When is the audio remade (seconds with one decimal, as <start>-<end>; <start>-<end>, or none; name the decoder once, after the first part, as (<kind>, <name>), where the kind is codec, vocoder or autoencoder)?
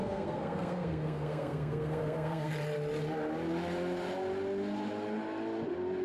0.0-2.5 (codec, SNAC)